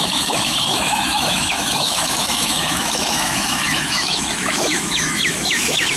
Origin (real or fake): fake